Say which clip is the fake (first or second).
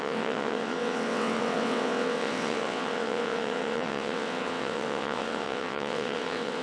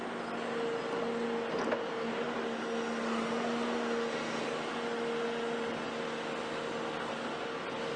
first